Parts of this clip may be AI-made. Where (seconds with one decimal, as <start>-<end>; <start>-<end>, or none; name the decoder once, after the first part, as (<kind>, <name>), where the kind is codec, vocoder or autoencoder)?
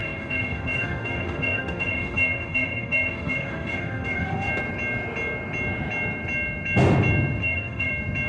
0.0-4.5 (autoencoder, DAC-VAE); 7.4-7.9